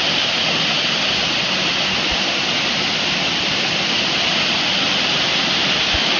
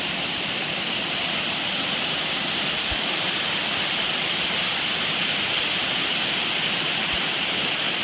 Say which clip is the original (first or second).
first